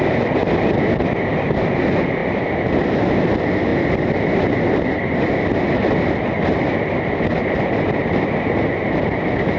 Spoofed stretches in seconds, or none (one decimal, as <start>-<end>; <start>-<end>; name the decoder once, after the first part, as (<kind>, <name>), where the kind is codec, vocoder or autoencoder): none